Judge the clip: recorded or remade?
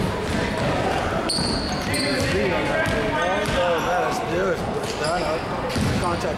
recorded